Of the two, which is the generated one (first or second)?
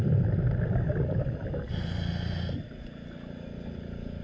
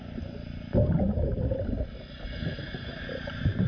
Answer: second